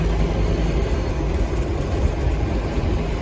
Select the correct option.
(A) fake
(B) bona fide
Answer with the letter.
B